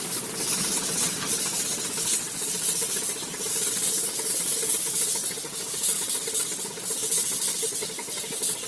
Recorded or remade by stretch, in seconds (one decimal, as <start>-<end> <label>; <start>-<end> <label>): 0.0-8.7 recorded

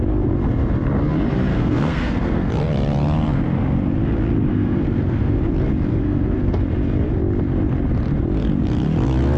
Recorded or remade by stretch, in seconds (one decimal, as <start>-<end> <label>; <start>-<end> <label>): 0.0-1.5 recorded; 1.5-2.5 remade; 2.5-4.5 recorded; 4.5-5.4 remade; 5.4-5.9 recorded; 5.9-6.6 remade; 6.6-9.4 recorded

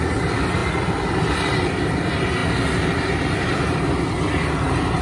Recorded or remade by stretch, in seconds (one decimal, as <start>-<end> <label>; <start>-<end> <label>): 0.0-5.0 recorded

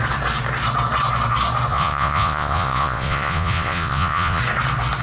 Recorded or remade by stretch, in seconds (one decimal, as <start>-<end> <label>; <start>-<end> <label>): 0.0-1.7 recorded; 1.7-4.4 remade; 4.4-5.0 recorded

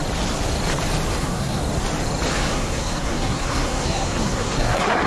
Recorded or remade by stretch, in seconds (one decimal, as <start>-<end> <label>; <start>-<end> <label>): 0.0-1.1 recorded; 1.1-1.6 remade; 1.6-2.3 recorded; 2.3-5.1 remade

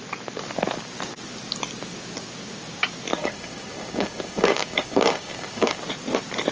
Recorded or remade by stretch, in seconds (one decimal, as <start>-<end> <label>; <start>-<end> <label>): 0.0-3.1 recorded; 3.1-5.8 remade; 5.8-6.5 recorded

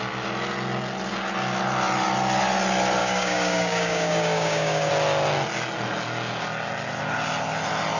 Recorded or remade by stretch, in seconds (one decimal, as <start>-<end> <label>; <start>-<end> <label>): 0.0-3.0 recorded; 3.0-4.9 remade; 4.9-8.0 recorded